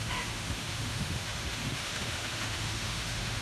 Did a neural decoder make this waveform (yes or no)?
yes